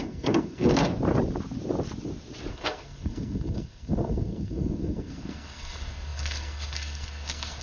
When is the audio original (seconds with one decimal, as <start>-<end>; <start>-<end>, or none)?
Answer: 0.9-2.5